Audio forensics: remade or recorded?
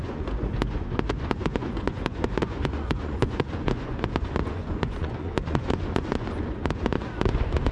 remade